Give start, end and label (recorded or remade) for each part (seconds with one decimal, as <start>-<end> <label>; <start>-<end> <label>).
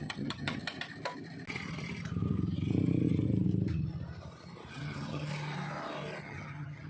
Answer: 0.0-0.6 remade; 0.6-4.7 recorded; 4.7-5.3 remade; 5.3-6.2 recorded; 6.2-6.9 remade